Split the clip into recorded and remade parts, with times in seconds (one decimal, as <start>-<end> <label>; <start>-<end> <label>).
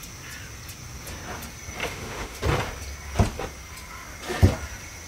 0.0-1.8 recorded; 1.8-2.4 remade; 2.4-5.1 recorded